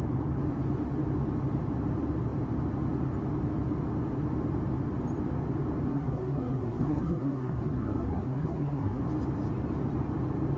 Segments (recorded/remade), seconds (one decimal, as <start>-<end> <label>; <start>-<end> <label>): 0.0-5.9 recorded; 5.9-9.0 remade; 9.0-10.6 recorded